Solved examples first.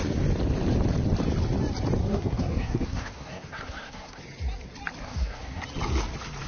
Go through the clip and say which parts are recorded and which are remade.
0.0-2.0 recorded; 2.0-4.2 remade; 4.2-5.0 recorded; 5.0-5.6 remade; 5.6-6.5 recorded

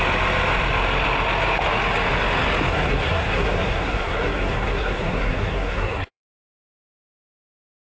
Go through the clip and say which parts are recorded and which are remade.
0.0-2.7 recorded; 2.7-6.4 remade; 6.4-7.9 recorded

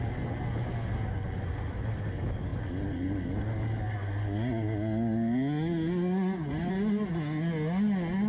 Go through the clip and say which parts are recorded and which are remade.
0.0-8.3 recorded

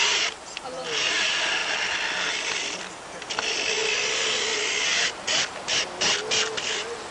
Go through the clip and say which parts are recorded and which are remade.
0.0-7.1 recorded

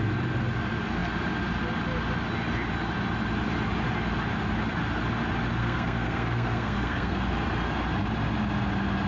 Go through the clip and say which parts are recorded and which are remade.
0.0-5.6 recorded; 5.6-7.2 remade; 7.2-9.1 recorded

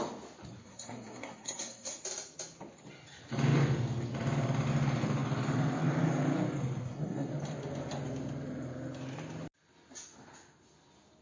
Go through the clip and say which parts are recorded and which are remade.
0.0-0.6 recorded; 0.6-2.0 remade; 2.0-6.8 recorded; 6.8-7.3 remade; 7.3-11.2 recorded

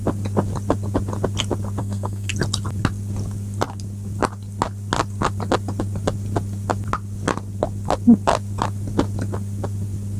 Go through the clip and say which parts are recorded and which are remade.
0.0-1.8 recorded; 1.8-2.3 remade; 2.3-10.2 recorded

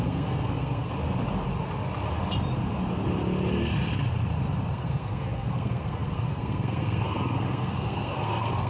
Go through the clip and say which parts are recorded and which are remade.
0.0-0.9 remade; 0.9-4.7 recorded; 4.7-8.7 remade